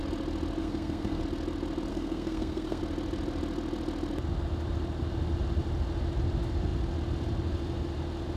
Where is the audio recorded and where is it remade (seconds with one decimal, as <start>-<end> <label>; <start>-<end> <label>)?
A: 0.0-0.6 recorded; 0.6-1.2 remade; 1.2-1.9 recorded; 1.9-2.8 remade; 2.8-8.4 recorded